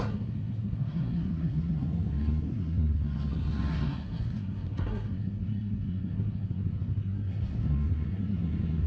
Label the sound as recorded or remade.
remade